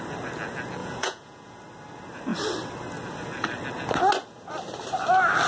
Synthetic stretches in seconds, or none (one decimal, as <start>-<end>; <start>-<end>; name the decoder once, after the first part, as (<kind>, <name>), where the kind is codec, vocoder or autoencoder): 0.8-1.6 (vocoder, Vocos)